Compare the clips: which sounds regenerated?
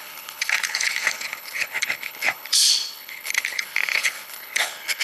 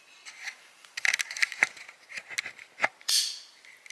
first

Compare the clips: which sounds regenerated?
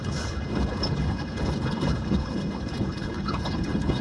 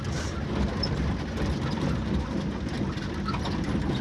first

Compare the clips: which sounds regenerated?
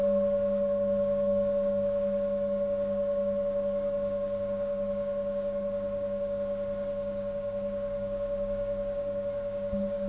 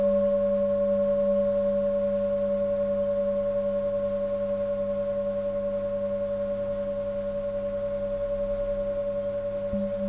first